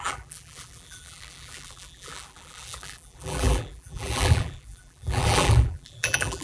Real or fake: fake